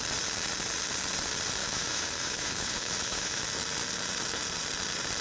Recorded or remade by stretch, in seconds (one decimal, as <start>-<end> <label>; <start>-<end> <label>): 0.0-1.6 recorded; 1.6-3.4 remade; 3.4-5.2 recorded